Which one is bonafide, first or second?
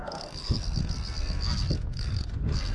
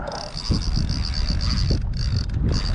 second